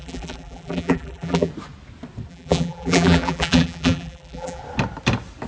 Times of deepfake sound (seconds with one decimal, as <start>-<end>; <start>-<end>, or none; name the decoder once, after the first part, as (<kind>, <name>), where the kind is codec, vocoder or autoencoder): 0.0-1.5 (vocoder, BigVGAN v2); 2.3-4.6